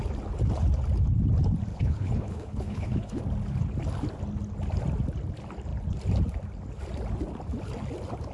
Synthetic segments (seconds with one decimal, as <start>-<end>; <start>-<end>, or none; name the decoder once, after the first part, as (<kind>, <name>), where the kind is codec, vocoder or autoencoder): 1.7-3.2 (codec, HILCodec)